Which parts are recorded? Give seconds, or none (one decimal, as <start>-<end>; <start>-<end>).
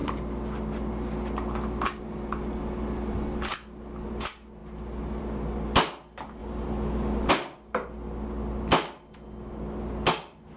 0.0-10.6